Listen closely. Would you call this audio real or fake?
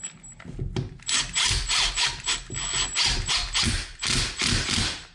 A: real